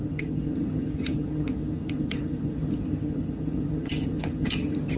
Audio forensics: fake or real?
fake